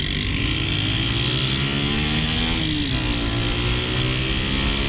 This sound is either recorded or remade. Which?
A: recorded